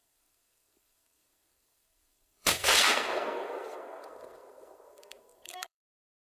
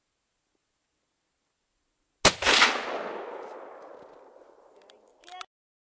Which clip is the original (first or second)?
second